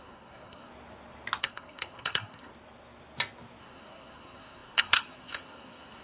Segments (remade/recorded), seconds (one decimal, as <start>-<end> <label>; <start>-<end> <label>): 0.0-0.7 remade; 0.7-1.4 recorded; 1.4-2.5 remade; 2.5-3.6 recorded; 3.6-6.0 remade